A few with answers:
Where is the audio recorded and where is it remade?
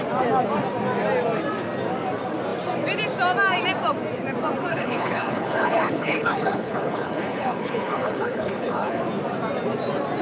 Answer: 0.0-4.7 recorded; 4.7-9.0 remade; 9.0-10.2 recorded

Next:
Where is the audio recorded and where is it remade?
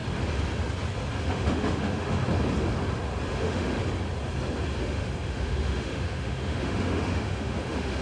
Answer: 0.0-1.2 recorded; 1.2-2.2 remade; 2.2-3.3 recorded; 3.3-3.8 remade; 3.8-4.8 recorded; 4.8-8.0 remade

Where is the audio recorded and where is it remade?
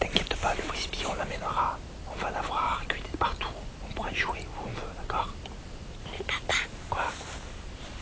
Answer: 0.0-8.0 recorded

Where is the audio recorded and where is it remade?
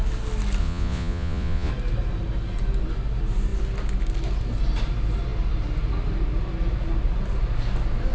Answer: 0.0-0.6 recorded; 0.6-1.7 remade; 1.7-8.1 recorded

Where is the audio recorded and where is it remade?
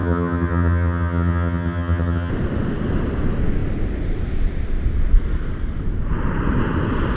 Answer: 0.0-2.3 remade; 2.3-7.2 recorded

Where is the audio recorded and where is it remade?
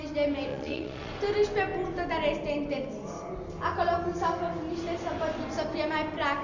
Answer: 0.0-0.5 recorded; 0.5-1.1 remade; 1.1-6.4 recorded